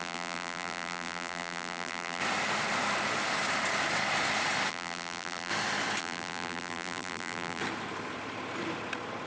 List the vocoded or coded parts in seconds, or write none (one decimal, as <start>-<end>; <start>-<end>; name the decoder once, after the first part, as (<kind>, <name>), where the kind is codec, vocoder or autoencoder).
0.0-2.2 (vocoder, BigVGAN v2); 4.7-5.5; 6.0-7.6